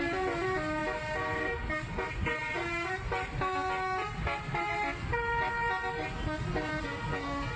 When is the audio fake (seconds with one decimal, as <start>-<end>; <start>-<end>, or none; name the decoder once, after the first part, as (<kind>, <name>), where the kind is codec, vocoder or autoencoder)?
none